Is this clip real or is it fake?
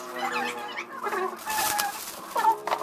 real